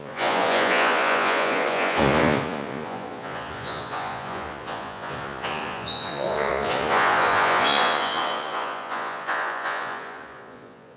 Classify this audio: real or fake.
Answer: fake